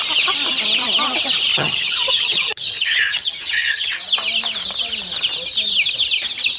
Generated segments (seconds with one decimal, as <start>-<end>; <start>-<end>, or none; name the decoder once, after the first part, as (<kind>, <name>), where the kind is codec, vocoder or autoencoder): 1.5-3.9 (vocoder, HiFi-GAN)